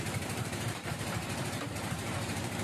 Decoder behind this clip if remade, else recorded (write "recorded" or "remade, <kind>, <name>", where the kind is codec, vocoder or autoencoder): remade, vocoder, BigVGAN v2